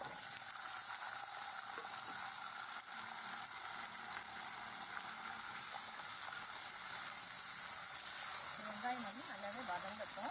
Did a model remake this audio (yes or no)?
no